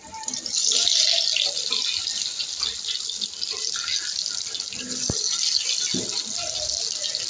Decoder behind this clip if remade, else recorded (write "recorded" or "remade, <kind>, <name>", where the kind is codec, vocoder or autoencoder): recorded